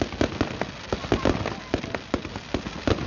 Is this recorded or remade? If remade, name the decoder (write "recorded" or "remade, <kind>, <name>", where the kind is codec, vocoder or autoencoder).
recorded